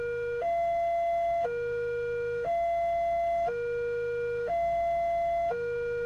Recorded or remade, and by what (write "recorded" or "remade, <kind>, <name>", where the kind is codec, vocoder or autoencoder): remade, autoencoder, DAC-VAE